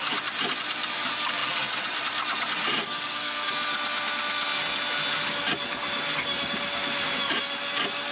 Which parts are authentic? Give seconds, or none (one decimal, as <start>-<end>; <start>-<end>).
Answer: 0.0-2.8; 3.5-8.1